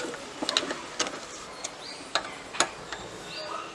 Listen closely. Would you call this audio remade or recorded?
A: recorded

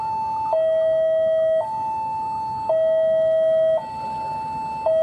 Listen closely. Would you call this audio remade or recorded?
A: recorded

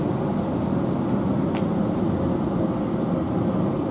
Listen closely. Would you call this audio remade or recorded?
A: recorded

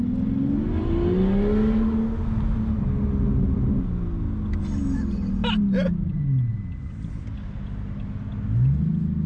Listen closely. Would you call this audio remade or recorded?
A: recorded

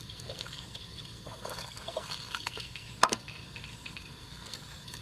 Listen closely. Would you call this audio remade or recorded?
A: remade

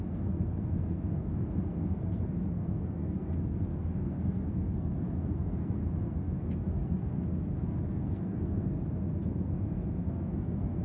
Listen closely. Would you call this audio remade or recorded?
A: remade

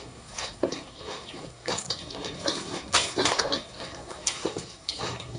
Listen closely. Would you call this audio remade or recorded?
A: remade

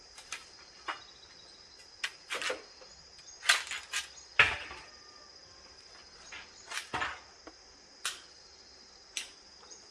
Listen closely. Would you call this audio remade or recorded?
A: recorded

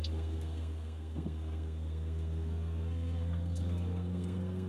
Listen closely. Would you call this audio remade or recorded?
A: remade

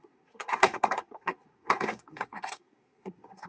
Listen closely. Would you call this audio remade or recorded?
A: remade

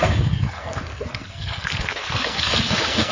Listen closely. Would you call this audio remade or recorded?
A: remade